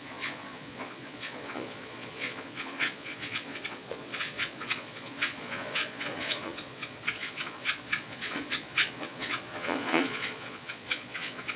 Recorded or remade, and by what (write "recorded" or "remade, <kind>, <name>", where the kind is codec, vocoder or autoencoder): remade, vocoder, Vocos